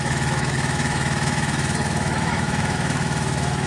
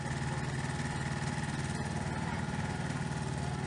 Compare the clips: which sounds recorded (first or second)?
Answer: second